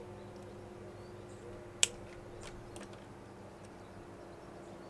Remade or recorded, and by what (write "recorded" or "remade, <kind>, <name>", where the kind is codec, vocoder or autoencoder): recorded